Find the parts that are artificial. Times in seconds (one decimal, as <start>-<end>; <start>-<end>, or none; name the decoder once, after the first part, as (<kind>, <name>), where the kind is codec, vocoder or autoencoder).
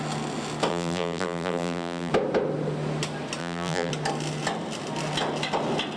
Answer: 0.7-2.1 (vocoder, BigVGAN v2); 3.4-3.9